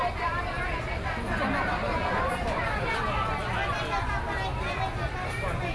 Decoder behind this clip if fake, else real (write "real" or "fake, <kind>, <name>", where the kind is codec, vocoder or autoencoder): real